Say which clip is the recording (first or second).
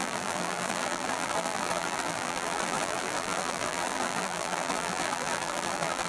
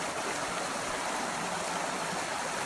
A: second